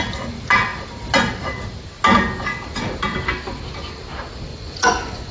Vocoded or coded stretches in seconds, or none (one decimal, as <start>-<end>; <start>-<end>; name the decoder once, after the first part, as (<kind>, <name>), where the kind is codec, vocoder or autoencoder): 4.5-5.3 (vocoder, Vocos)